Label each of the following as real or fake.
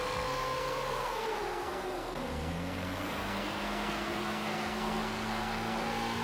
fake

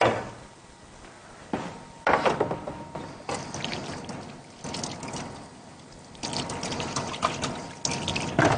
real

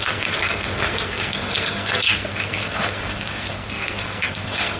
fake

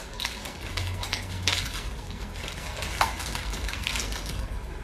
fake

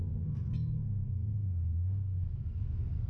fake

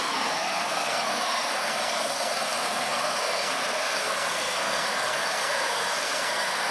fake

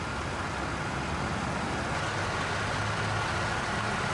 real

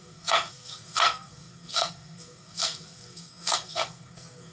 fake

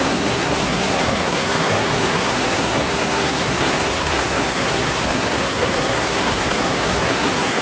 fake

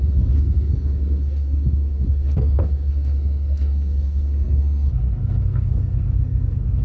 fake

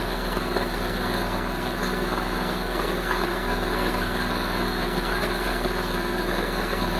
fake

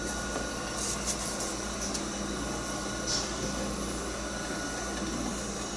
real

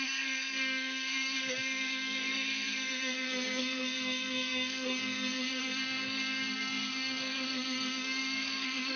fake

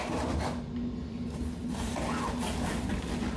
real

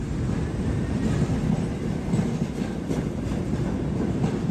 real